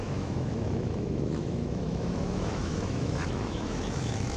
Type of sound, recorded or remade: remade